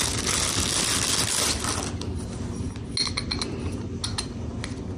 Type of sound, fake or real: real